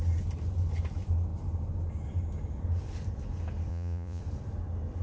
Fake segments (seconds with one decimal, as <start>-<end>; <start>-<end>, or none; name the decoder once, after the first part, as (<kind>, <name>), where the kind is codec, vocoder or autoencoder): 3.7-4.2 (vocoder, Vocos)